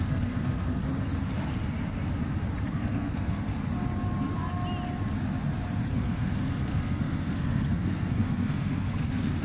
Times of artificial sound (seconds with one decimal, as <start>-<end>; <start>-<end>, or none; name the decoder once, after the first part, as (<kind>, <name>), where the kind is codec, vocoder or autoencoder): 0.0-0.8 (codec, SNAC); 2.7-3.5; 5.9-9.4